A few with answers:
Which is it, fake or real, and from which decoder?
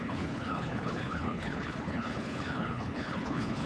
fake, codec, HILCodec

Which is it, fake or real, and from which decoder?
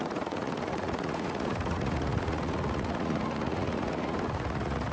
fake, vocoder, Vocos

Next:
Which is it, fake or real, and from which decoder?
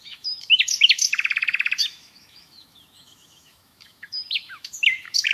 fake, autoencoder, DAC-VAE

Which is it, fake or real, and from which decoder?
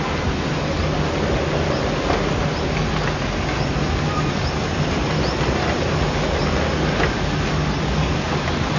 real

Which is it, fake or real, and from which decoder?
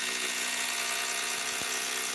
fake, vocoder, Vocos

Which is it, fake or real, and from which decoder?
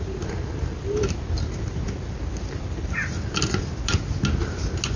real